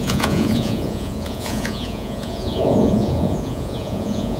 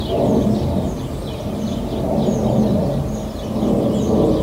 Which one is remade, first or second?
first